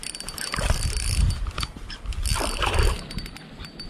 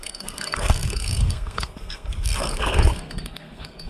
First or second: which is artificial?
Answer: second